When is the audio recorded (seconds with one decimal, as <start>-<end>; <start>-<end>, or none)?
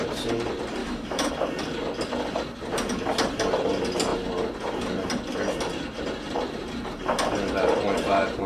0.0-0.8; 1.3-8.5